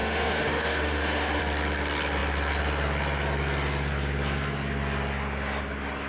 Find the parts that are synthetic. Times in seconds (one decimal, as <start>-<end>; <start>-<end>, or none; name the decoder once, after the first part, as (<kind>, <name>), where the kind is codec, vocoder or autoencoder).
0.0-1.4 (autoencoder, DAC-VAE)